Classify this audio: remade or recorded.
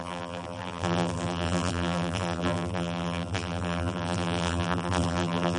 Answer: remade